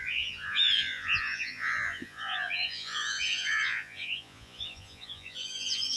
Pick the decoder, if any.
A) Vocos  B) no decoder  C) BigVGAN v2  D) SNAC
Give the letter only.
A